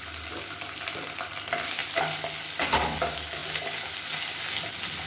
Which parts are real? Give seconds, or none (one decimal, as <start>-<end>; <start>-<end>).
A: 0.0-5.1